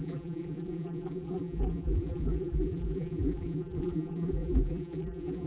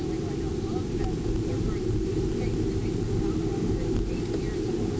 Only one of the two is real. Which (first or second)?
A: second